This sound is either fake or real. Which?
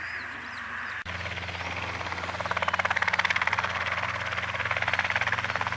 real